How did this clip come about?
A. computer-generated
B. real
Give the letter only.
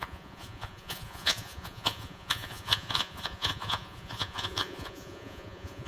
A